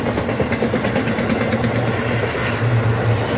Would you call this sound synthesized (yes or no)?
no